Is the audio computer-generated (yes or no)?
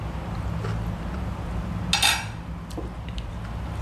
no